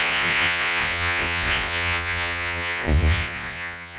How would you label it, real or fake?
fake